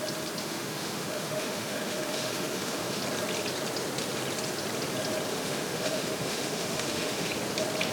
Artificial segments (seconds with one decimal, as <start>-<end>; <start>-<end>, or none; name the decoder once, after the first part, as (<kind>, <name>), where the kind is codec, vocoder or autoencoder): 0.4-3.0 (autoencoder, DAC-VAE); 5.3-7.3